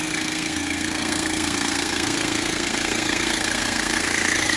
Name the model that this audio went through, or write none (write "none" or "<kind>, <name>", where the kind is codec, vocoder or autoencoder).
codec, SNAC